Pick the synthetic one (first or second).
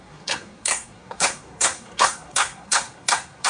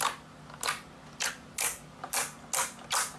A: first